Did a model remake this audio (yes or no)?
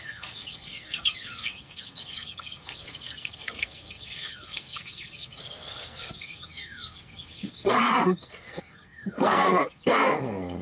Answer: yes